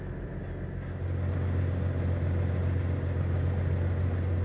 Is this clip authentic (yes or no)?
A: yes